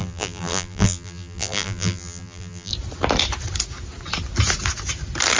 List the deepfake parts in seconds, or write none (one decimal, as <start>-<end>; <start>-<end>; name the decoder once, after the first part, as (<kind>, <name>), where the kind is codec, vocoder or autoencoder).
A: 0.0-2.7 (vocoder, BigVGAN v2)